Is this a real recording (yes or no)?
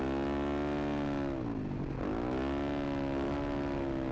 yes